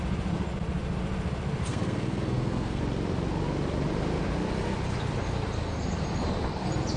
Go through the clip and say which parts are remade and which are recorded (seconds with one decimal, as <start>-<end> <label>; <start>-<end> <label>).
0.0-1.7 recorded; 1.7-2.8 remade; 2.8-7.0 recorded